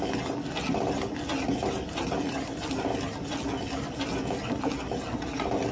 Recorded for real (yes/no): yes